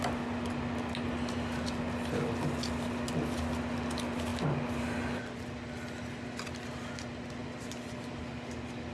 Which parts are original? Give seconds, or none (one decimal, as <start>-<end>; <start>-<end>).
0.0-8.9